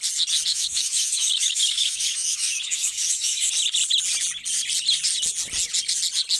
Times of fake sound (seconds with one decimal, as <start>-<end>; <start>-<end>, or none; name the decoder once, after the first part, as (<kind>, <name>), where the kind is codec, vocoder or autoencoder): 0.5-3.5 (autoencoder, DAC-VAE)